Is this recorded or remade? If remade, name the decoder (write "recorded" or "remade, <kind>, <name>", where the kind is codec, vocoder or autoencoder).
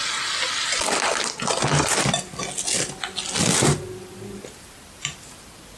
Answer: recorded